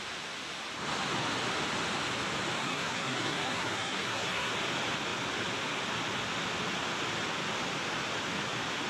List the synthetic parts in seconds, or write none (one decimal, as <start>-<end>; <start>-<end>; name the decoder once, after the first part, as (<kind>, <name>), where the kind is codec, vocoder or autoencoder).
2.6-4.5 (codec, SNAC)

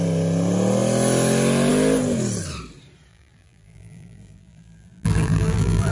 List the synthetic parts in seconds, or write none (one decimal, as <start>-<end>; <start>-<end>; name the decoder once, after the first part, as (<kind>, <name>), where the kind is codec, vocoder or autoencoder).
3.1-5.9 (vocoder, BigVGAN v2)

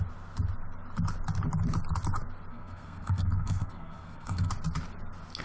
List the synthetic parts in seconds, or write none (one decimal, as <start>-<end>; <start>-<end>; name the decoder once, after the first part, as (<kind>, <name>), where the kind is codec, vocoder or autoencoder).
2.5-4.5 (codec, SNAC)

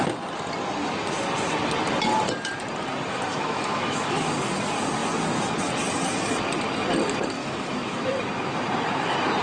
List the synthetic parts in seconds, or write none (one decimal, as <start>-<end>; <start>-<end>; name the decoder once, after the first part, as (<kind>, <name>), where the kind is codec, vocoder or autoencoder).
3.3-4.3 (autoencoder, DAC-VAE); 7.4-8.1

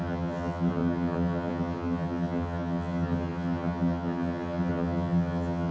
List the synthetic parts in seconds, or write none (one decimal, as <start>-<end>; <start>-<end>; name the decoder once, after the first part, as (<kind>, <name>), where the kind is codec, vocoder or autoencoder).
0.0-5.7 (vocoder, HiFi-GAN)

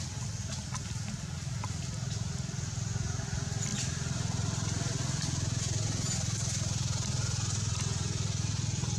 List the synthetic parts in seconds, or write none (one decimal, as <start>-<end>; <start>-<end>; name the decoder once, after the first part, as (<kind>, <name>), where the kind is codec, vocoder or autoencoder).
none

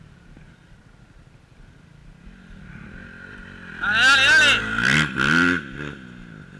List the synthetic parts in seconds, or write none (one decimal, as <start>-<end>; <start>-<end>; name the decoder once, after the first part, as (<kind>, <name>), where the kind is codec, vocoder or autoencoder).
none